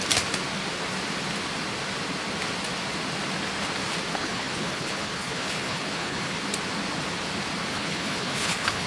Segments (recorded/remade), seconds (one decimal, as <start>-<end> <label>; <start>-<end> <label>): 0.0-4.2 recorded; 4.2-6.4 remade; 6.4-7.7 recorded; 7.7-8.9 remade